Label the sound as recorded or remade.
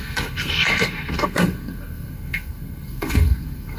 remade